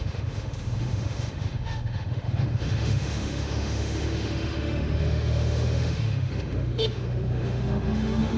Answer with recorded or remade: remade